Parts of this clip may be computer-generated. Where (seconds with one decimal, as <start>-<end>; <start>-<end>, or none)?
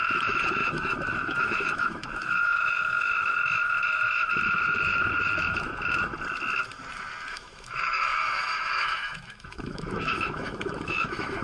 0.0-6.1; 7.3-11.4